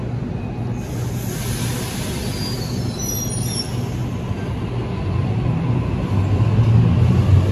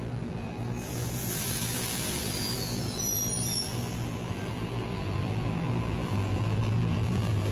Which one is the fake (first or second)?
second